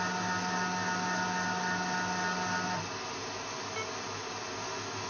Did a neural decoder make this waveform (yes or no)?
no